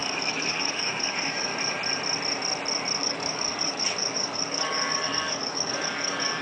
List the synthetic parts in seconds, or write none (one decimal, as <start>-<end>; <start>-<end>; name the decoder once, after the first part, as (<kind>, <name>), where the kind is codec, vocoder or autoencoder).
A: 0.0-1.5 (codec, DAC); 3.0-6.4